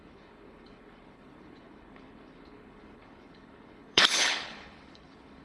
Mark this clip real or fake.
fake